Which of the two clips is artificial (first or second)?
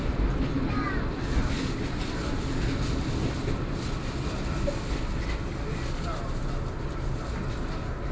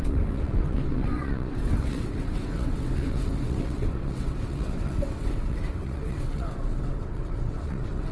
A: second